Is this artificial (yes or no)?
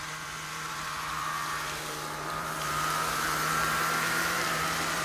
yes